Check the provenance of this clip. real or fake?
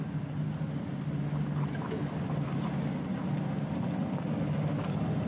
real